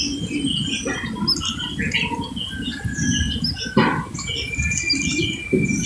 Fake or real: real